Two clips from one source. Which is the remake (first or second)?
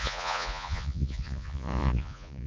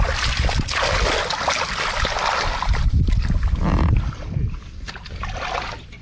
first